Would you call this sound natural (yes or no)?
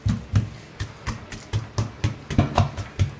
yes